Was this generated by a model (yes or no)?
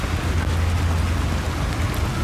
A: no